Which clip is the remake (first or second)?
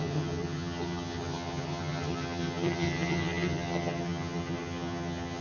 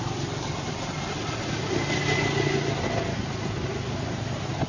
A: first